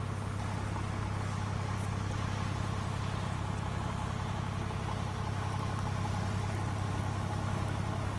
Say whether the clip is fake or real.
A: real